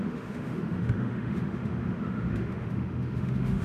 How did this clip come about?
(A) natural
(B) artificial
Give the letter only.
B